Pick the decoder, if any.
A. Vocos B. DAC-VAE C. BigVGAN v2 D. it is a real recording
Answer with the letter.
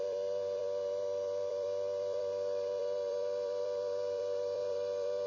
C